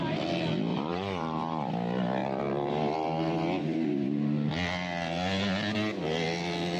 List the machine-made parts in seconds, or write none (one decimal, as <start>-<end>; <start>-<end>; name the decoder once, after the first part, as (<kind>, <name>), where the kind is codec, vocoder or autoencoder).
0.7-1.7 (vocoder, BigVGAN v2); 2.2-2.7